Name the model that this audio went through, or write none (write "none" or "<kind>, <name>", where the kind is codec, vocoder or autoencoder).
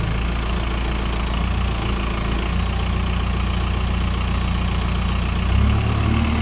none